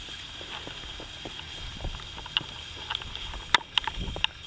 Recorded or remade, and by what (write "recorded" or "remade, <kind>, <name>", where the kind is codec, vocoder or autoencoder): recorded